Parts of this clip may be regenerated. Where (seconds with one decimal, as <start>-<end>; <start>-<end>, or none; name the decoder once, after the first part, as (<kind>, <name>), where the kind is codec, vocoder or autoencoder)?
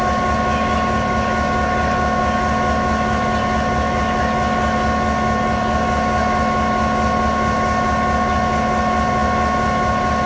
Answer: none